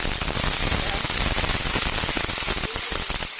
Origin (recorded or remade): recorded